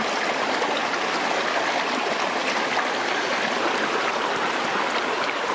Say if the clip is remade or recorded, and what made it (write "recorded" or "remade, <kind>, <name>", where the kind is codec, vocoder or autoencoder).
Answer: recorded